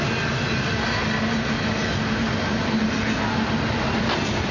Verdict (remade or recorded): recorded